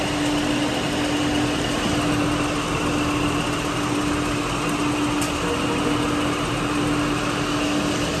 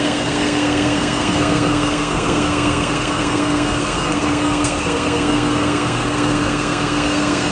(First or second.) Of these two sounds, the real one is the first